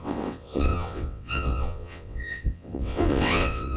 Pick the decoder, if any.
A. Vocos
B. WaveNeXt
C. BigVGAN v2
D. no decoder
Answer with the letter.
B